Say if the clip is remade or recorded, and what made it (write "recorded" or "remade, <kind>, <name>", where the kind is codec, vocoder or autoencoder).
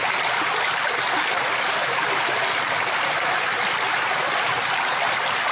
recorded